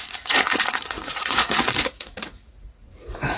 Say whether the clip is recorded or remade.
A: remade